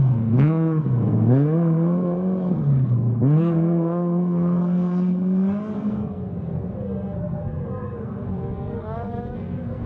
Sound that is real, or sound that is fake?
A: fake